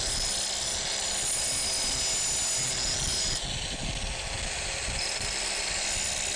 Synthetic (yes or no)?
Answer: no